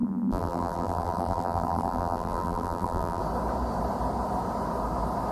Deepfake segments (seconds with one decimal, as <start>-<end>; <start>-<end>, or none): 0.0-3.2